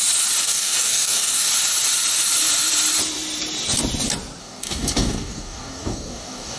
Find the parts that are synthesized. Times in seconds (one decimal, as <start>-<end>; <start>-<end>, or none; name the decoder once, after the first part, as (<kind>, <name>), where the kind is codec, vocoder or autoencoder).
0.4-1.5 (codec, DAC); 4.4-6.6